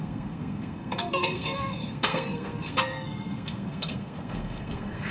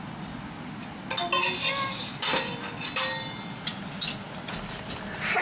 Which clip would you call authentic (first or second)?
second